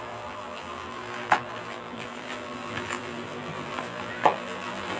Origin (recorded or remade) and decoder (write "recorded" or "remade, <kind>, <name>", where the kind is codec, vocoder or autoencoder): remade, vocoder, BigVGAN v2